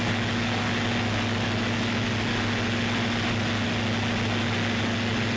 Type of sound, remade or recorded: recorded